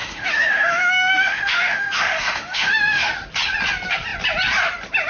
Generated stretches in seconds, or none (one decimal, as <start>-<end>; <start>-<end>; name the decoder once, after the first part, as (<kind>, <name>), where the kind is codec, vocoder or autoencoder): 0.0-3.1 (autoencoder, DAC-VAE)